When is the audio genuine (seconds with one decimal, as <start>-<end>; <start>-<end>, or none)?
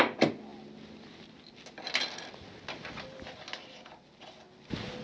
0.0-5.0